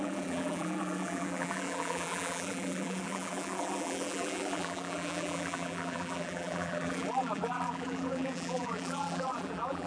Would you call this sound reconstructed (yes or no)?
yes